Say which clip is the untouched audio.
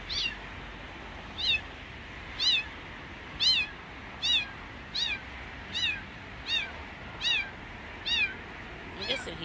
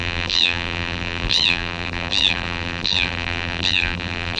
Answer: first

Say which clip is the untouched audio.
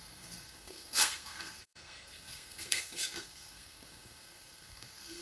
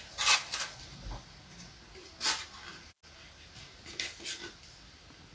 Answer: second